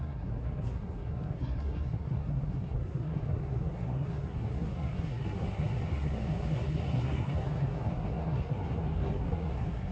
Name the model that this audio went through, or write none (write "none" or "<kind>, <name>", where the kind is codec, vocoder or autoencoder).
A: codec, SNAC